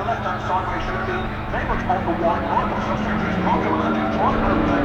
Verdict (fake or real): fake